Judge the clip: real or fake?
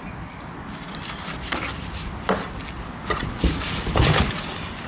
real